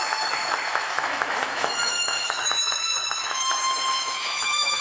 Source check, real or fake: fake